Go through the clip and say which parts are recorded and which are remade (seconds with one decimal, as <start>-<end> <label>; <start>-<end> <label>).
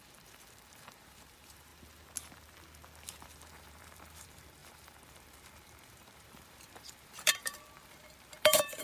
0.0-1.7 remade; 1.7-3.1 recorded; 3.1-8.8 remade